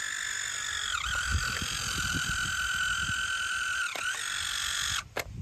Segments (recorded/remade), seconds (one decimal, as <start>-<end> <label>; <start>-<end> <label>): 0.0-5.4 recorded